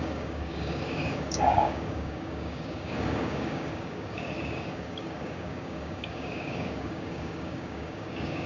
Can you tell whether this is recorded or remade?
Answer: remade